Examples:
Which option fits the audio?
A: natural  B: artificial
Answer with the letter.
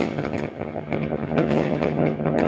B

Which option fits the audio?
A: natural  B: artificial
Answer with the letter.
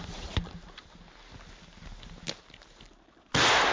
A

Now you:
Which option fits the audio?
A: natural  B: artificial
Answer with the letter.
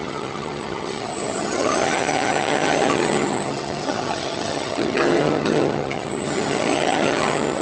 B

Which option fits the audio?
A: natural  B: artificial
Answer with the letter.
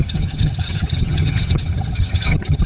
B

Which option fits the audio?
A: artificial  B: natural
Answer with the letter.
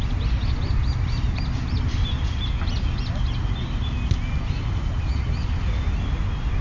B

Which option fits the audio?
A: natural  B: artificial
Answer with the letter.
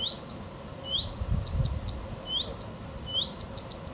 A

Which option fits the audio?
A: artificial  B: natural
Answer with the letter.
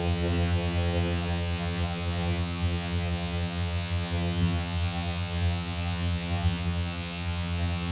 A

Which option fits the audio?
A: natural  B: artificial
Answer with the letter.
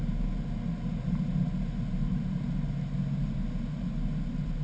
A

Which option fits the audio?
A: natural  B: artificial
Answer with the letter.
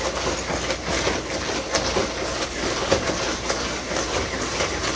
A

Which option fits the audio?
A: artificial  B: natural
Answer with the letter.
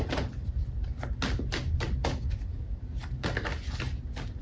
B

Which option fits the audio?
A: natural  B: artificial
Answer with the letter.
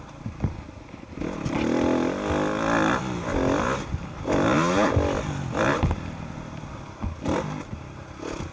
A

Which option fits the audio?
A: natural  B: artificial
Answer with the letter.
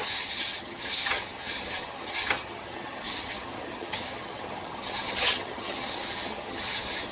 B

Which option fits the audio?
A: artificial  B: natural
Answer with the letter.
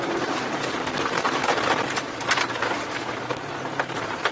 B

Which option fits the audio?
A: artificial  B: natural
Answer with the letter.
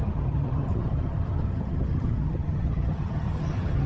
A